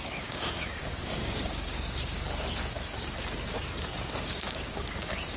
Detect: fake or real fake